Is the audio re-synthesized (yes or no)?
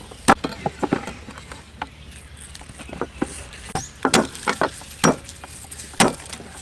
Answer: no